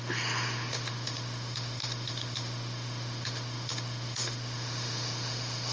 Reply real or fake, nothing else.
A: fake